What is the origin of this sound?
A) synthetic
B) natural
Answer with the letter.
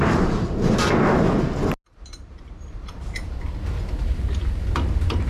B